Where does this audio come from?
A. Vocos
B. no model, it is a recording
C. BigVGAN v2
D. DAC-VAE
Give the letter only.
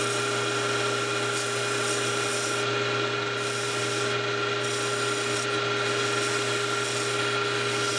B